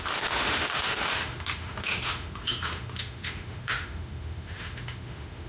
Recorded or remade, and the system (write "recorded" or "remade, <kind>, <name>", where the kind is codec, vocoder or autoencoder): remade, autoencoder, DAC-VAE